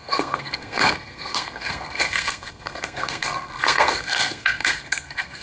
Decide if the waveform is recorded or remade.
remade